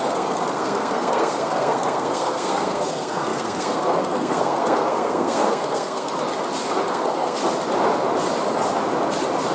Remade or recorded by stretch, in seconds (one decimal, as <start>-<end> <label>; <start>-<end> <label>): 0.0-6.3 remade; 6.3-6.9 recorded; 6.9-7.4 remade; 7.4-9.5 recorded